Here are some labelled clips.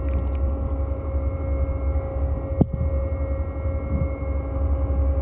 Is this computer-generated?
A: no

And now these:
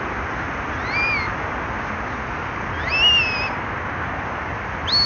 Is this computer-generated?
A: no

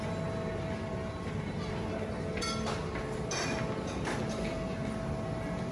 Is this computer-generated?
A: no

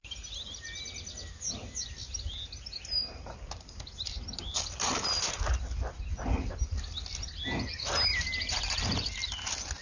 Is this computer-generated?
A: no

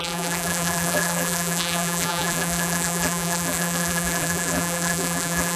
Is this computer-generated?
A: yes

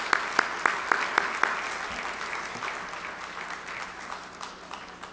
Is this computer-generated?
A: no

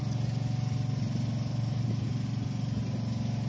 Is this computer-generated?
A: no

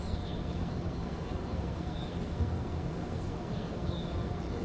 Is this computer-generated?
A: yes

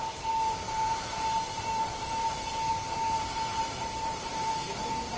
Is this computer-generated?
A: yes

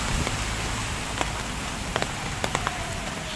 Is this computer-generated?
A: no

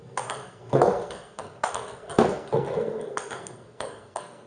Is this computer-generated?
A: yes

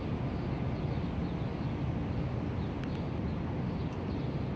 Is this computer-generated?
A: no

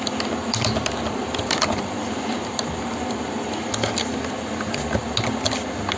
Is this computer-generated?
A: no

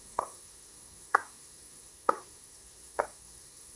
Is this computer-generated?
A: yes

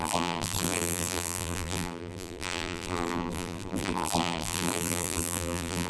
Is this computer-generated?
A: yes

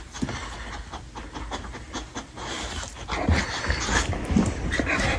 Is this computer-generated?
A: no